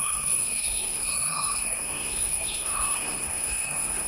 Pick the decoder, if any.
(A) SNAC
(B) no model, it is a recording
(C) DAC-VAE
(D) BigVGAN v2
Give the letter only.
A